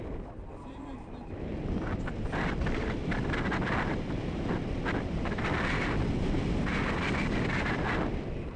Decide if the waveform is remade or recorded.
recorded